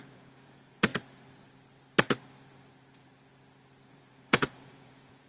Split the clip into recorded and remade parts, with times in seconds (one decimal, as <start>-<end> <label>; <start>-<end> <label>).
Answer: 0.0-0.9 remade; 0.9-3.9 recorded; 3.9-5.3 remade